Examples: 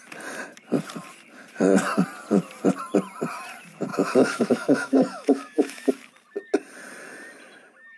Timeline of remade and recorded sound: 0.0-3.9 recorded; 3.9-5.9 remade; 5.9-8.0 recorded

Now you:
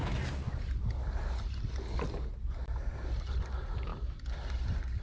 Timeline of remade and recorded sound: 0.0-5.0 recorded

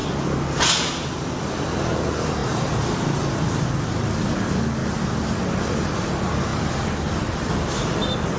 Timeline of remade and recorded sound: 0.0-2.4 recorded; 2.4-3.7 remade; 3.7-6.5 recorded; 6.5-7.7 remade; 7.7-8.4 recorded

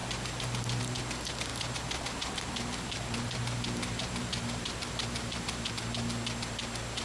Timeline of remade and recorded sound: 0.0-0.8 remade; 0.8-1.5 recorded; 1.5-5.7 remade; 5.7-7.0 recorded